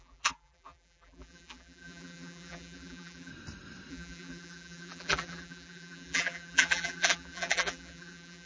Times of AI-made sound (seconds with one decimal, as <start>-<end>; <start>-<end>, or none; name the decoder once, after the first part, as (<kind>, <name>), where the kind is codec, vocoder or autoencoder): 0.0-3.3 (vocoder, BigVGAN v2); 3.9-8.5